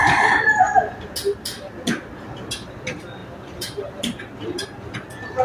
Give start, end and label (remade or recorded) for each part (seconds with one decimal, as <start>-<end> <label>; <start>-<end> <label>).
0.0-3.2 recorded; 3.2-4.2 remade; 4.2-5.4 recorded